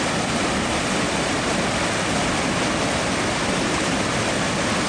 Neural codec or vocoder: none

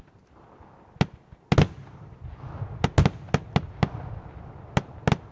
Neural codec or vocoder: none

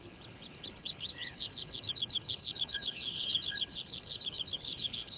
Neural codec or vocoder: codec, HILCodec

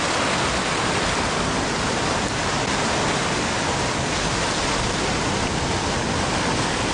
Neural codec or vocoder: none